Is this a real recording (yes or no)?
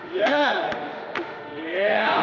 no